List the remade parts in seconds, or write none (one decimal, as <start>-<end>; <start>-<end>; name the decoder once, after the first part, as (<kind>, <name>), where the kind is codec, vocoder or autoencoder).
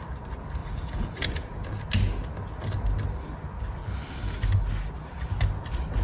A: 0.6-1.7 (vocoder, Vocos)